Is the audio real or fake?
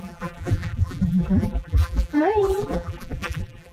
fake